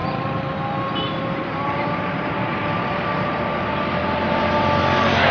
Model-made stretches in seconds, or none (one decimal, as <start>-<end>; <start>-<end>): 0.8-5.3